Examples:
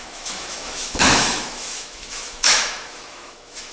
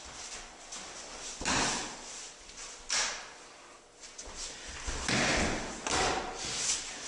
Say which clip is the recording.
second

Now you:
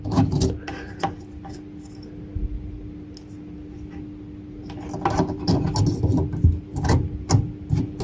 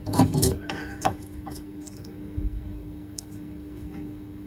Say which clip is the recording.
first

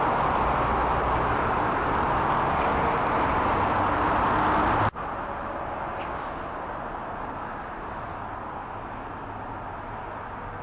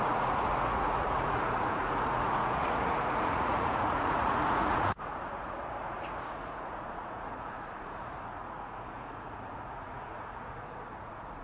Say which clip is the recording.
first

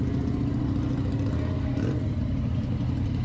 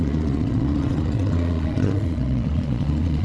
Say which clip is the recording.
first